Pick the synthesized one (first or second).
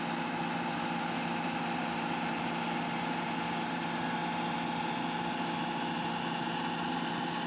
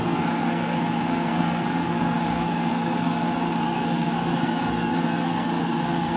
second